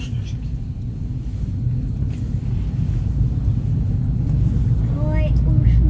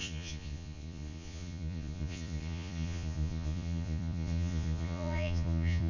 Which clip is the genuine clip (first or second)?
first